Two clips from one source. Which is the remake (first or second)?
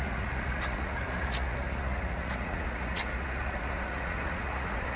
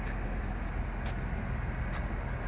first